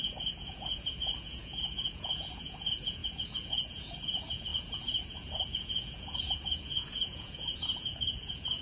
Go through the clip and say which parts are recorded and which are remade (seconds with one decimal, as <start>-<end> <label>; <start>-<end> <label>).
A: 0.0-8.6 remade